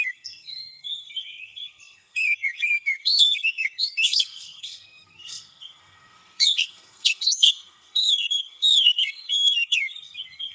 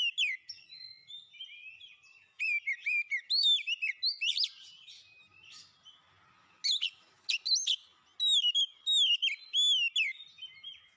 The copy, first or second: first